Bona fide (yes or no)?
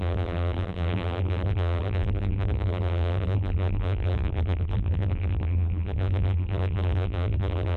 no